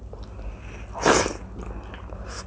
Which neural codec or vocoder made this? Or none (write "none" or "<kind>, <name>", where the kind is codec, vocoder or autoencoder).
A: none